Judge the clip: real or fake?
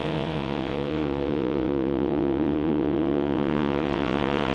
fake